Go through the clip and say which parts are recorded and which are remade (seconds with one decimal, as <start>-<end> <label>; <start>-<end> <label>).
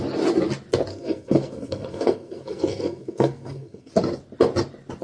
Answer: 0.0-0.9 recorded; 0.9-3.9 remade; 3.9-5.0 recorded